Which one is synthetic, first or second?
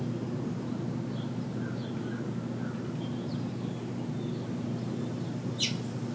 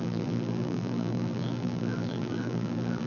second